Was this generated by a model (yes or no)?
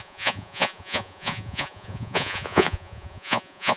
yes